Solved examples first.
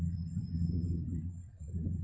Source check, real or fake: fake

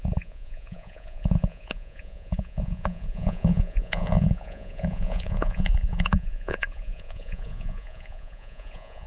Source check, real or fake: fake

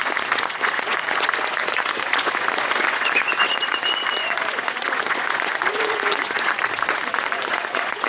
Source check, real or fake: fake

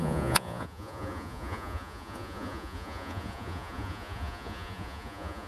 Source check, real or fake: fake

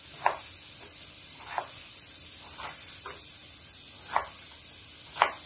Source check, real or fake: real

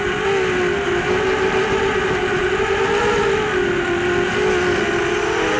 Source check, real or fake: real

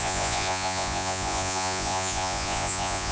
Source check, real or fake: fake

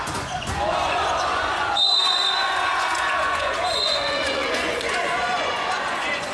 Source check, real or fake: fake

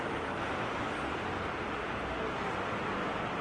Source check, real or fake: real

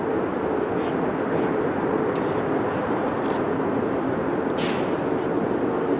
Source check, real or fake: real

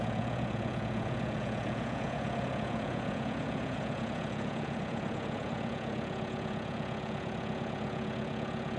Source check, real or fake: fake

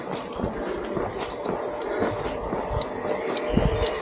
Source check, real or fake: real